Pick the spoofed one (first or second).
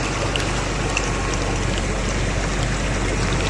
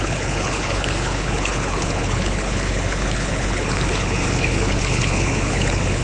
second